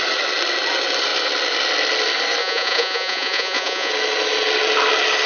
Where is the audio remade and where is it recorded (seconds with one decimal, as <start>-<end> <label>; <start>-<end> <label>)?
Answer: 0.0-2.4 recorded; 2.4-3.9 remade; 3.9-5.3 recorded